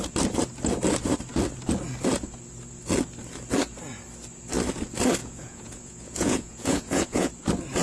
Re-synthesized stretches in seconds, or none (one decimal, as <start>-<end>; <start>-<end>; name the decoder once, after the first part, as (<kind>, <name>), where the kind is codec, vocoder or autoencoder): 5.2-7.3 (vocoder, Vocos)